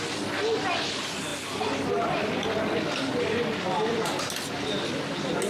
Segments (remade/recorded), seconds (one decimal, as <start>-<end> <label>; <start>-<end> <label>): 0.0-5.5 recorded